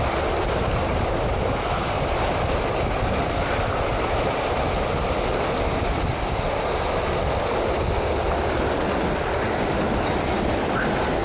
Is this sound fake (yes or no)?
no